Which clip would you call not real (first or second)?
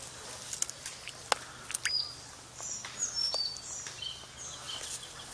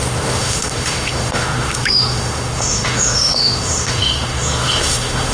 second